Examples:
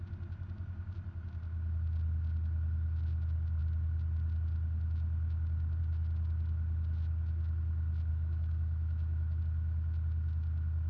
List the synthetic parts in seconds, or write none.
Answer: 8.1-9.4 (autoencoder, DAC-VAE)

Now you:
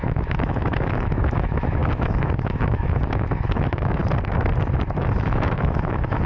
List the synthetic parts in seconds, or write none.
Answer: 0.0-4.0 (autoencoder, DAC-VAE); 5.0-6.3

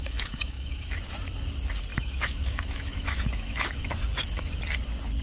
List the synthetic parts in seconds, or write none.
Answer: 0.0-1.0 (autoencoder, DAC-VAE); 1.9-3.9

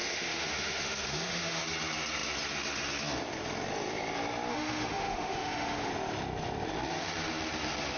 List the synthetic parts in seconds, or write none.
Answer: 0.0-1.6 (autoencoder, DAC-VAE); 4.5-5.9

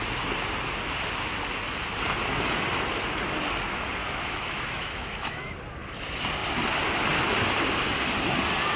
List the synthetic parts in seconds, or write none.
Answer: 4.0-5.5 (autoencoder, DAC-VAE)

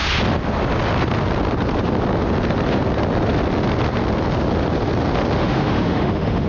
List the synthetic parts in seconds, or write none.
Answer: 5.4-6.5 (autoencoder, DAC-VAE)